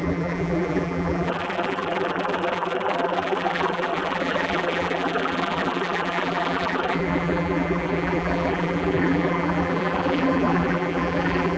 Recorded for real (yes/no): no